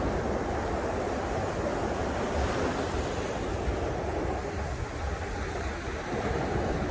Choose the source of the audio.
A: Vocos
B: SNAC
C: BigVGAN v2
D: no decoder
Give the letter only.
D